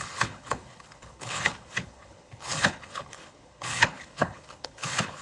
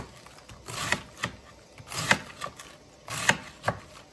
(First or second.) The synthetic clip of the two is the first